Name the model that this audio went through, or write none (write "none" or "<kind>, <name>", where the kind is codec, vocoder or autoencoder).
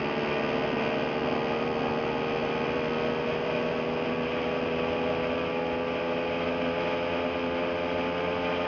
none